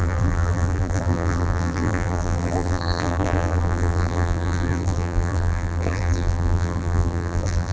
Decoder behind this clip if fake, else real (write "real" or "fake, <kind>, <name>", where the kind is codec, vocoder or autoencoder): fake, vocoder, BigVGAN v2